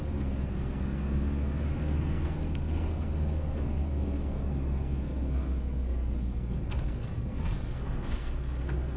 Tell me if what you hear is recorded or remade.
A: remade